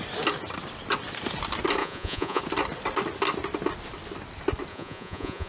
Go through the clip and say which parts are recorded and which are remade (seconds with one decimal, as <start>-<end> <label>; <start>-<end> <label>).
0.0-1.8 recorded; 1.8-2.4 remade; 2.4-4.7 recorded; 4.7-5.5 remade